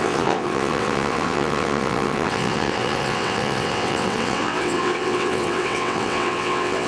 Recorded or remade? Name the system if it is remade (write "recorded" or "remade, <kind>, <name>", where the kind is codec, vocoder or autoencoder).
remade, vocoder, WaveNeXt